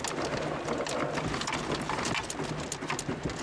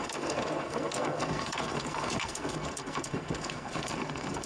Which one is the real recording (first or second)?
first